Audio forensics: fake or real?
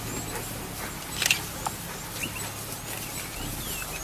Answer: real